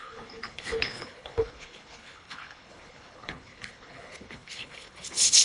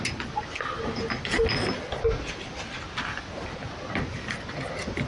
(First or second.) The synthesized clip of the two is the first